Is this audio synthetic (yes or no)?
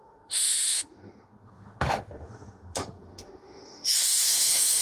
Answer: yes